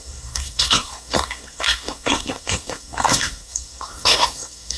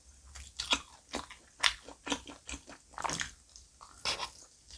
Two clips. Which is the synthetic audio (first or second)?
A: first